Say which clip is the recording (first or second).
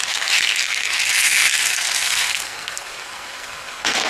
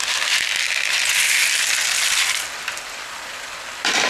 second